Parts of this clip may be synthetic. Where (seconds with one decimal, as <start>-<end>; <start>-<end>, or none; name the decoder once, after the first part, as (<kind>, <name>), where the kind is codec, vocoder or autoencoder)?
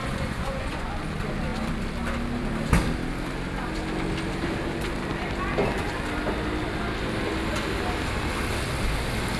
0.0-0.9 (vocoder, Vocos)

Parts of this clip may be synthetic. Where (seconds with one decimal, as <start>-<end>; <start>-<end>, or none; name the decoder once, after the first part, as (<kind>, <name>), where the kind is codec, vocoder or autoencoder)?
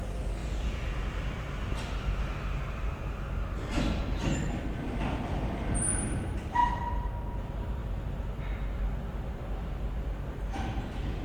0.4-1.0 (vocoder, Vocos)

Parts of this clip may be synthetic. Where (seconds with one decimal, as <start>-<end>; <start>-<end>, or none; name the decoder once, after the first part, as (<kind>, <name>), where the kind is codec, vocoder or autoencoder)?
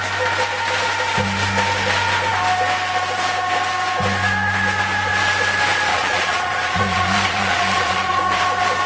5.9-8.2 (vocoder, Vocos)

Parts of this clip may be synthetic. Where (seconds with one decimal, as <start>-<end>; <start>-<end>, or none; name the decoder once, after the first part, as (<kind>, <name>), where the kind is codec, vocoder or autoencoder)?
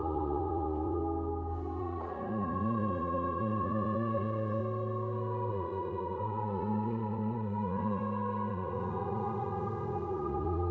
0.0-1.0 (vocoder, Vocos); 1.8-4.6; 5.5-8.0; 8.5-10.7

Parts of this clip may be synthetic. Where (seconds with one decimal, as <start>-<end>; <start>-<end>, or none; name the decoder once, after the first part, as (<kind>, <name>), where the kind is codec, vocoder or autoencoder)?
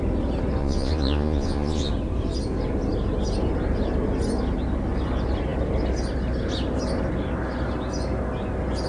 0.6-1.9 (vocoder, Vocos)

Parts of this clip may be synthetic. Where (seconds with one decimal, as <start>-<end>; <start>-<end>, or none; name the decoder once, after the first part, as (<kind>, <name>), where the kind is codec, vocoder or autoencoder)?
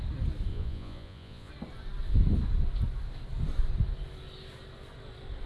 0.5-1.5 (vocoder, Vocos)